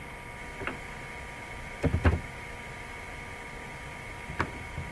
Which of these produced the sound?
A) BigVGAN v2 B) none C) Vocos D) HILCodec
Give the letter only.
B